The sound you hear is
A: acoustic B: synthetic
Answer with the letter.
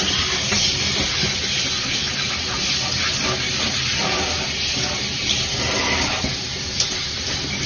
A